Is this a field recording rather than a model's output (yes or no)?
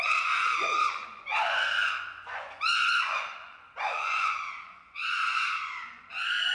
no